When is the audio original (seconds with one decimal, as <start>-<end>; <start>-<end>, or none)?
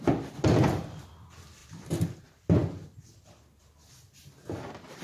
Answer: 0.0-1.6; 2.2-5.0